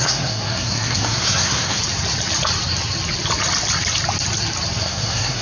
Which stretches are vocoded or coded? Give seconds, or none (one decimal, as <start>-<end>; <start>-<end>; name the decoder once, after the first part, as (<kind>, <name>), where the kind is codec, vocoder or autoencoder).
0.0-1.8 (codec, SNAC); 4.8-5.4